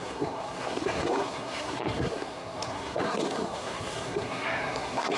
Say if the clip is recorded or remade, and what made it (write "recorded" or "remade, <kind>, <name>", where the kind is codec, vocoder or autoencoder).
remade, codec, SNAC